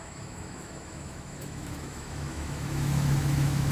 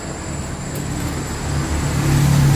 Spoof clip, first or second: first